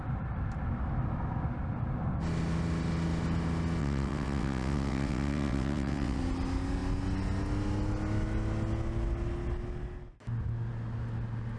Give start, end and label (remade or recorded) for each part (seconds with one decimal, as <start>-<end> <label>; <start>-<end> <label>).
0.0-3.8 recorded; 3.8-6.2 remade; 6.2-11.6 recorded